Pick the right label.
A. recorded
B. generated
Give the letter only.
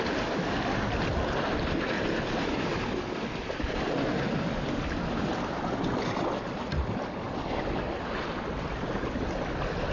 A